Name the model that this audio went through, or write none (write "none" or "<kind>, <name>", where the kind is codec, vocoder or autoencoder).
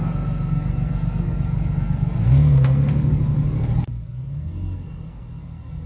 codec, SNAC